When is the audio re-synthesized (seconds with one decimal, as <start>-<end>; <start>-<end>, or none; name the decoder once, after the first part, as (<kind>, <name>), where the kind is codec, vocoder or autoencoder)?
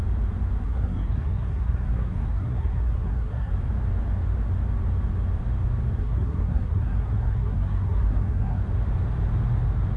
0.6-3.5 (codec, SNAC); 6.0-8.6